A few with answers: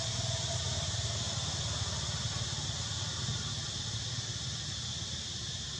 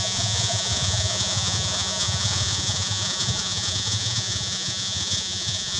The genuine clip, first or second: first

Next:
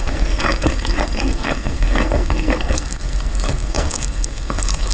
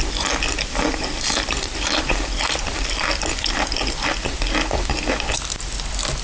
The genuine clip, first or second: second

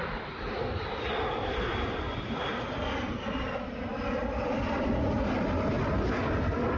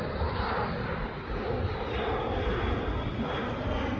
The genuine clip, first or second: second